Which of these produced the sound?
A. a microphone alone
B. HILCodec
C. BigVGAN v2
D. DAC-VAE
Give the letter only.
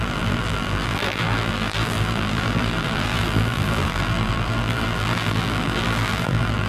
C